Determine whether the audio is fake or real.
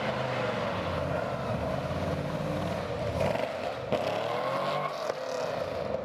real